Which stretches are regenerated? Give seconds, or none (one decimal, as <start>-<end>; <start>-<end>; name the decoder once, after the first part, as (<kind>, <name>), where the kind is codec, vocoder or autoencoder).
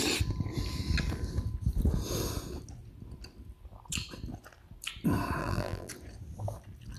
5.4-5.9 (vocoder, BigVGAN v2)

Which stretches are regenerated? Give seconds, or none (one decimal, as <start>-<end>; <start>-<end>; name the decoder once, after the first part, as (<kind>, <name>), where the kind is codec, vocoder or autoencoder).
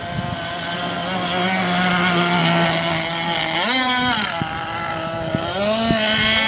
none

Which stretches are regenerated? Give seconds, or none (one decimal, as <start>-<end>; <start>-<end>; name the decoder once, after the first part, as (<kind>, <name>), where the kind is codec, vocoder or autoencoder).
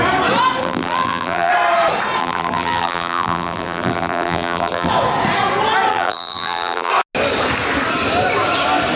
0.6-1.5 (vocoder, BigVGAN v2); 2.2-4.9; 5.9-6.9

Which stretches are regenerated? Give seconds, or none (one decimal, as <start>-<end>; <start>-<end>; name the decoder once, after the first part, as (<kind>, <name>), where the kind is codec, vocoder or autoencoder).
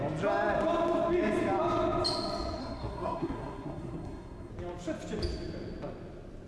2.6-4.5 (codec, SNAC)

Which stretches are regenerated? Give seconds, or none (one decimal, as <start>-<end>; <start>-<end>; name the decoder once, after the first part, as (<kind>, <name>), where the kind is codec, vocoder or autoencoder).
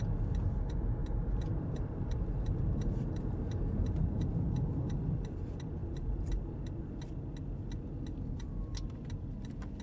1.0-4.6 (vocoder, BigVGAN v2)